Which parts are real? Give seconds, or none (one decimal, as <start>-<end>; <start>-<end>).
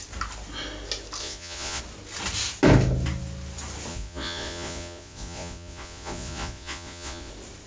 0.0-1.2; 1.8-3.9; 7.3-7.7